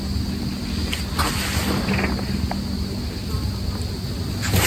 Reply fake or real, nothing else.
real